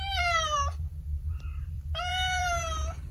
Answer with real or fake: fake